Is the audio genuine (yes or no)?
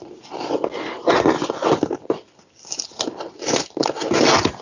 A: yes